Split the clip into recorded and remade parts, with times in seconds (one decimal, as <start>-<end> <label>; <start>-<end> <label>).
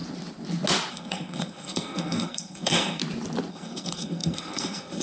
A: 0.0-0.9 recorded; 0.9-3.0 remade; 3.0-3.5 recorded; 3.5-5.0 remade